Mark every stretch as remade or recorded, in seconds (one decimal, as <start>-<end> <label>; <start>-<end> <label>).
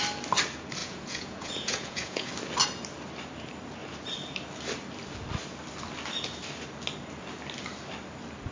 0.0-0.8 recorded; 0.8-2.3 remade; 2.3-8.5 recorded